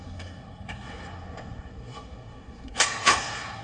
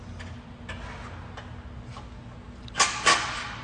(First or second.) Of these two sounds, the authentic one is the second